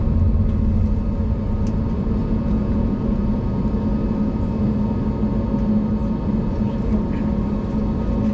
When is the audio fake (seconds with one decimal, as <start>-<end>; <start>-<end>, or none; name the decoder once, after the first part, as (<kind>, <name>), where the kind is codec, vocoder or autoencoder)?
2.2-3.6 (vocoder, Vocos)